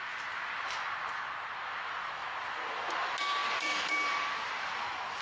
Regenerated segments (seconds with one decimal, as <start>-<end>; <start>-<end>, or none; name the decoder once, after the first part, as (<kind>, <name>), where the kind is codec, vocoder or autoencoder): 3.4-4.5 (vocoder, BigVGAN v2)